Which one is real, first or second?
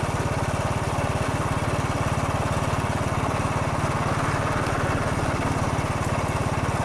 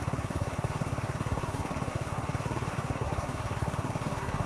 first